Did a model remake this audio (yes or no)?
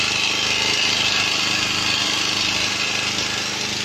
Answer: no